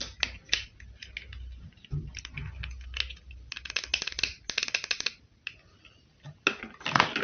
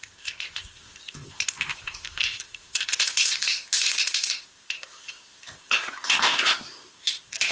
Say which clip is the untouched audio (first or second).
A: first